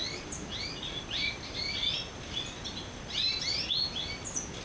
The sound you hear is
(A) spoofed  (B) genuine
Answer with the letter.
B